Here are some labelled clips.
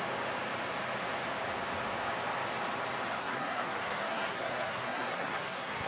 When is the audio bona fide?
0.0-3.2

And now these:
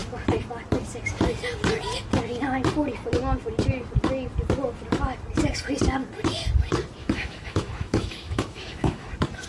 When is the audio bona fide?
0.0-7.0; 9.1-9.5